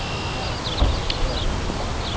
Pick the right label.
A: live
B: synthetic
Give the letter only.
A